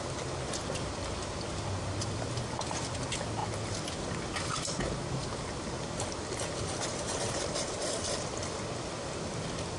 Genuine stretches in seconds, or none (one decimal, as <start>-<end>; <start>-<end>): 0.0-6.9; 8.3-9.8